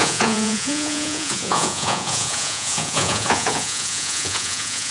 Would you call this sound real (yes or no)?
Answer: no